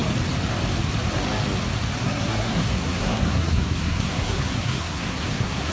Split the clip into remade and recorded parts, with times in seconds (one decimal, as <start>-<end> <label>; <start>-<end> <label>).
0.0-2.0 recorded; 2.0-5.7 remade